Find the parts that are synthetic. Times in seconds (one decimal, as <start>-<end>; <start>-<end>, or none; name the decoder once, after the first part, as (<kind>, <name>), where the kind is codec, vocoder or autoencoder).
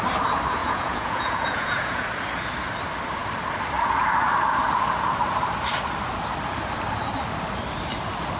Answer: 0.6-2.1 (vocoder, Vocos)